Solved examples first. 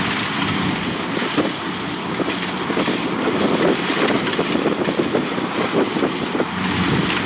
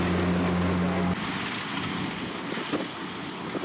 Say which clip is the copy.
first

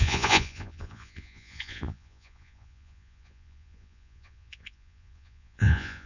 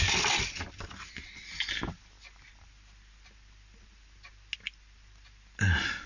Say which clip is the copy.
first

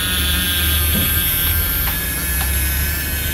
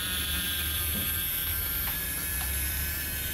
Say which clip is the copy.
second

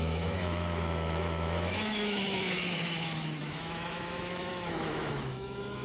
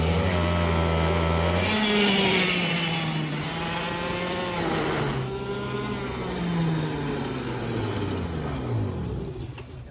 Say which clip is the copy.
first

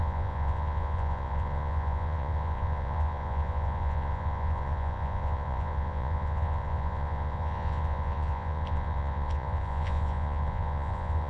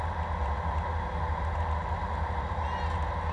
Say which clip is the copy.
first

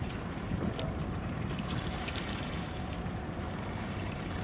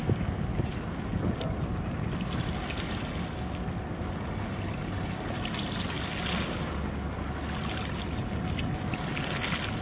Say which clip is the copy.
first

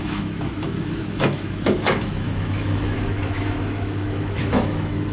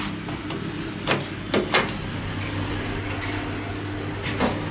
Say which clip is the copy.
first